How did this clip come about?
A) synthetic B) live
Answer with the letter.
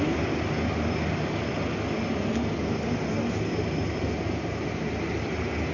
B